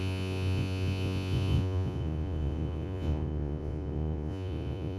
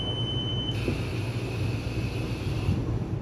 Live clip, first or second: second